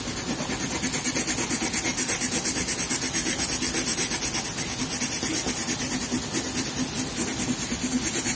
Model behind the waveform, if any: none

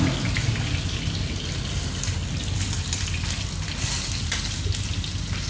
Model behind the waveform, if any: none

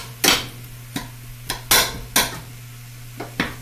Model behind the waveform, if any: none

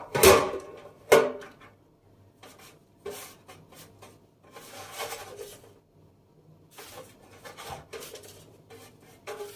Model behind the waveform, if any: none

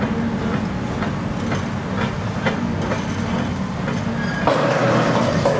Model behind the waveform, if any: none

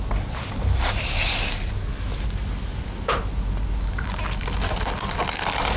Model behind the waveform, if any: none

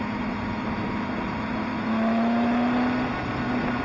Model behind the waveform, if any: none